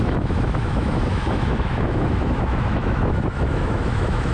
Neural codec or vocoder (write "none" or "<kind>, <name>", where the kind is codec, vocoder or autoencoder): autoencoder, DAC-VAE